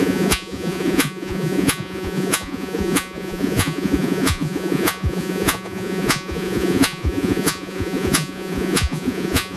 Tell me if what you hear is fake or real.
fake